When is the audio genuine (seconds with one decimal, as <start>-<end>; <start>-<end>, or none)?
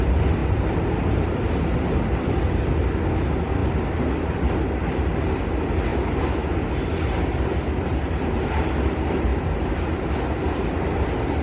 0.0-5.9; 6.5-9.3; 10.1-11.4